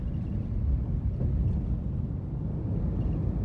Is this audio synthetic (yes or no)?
no